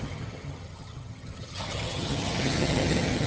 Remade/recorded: remade